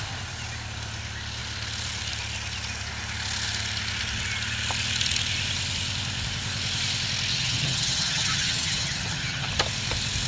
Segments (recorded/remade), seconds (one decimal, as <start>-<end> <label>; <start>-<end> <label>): 0.0-7.3 recorded; 7.3-9.5 remade; 9.5-10.3 recorded